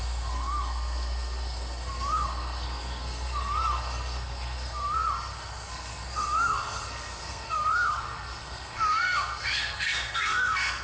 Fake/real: fake